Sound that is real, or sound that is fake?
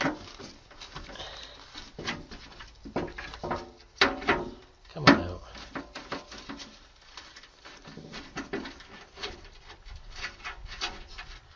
real